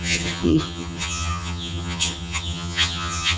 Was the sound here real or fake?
fake